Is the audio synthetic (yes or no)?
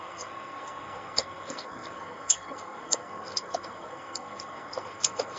yes